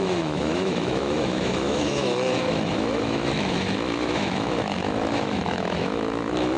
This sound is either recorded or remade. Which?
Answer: remade